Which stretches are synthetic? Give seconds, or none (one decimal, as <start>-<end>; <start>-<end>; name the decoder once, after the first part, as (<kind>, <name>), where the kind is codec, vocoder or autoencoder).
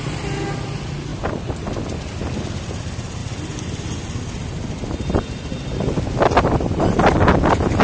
none